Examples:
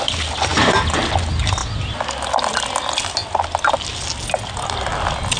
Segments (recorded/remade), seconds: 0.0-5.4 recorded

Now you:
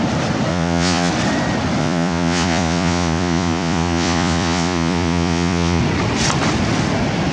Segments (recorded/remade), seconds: 0.0-0.5 recorded; 0.5-1.1 remade; 1.1-1.8 recorded; 1.8-5.8 remade; 5.8-7.3 recorded

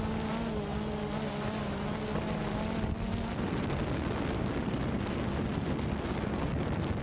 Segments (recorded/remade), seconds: 0.0-7.0 recorded